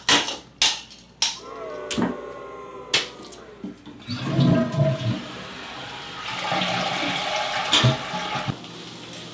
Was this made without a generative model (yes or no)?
yes